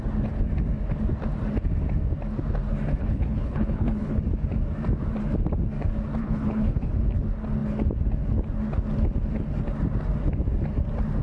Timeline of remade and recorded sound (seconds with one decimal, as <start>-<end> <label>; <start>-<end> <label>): 0.0-3.0 recorded; 3.0-4.2 remade; 4.2-6.2 recorded; 6.2-6.9 remade; 6.9-11.2 recorded